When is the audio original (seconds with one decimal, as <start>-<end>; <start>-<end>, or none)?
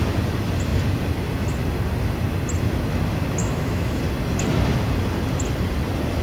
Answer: 0.0-3.4; 4.0-6.2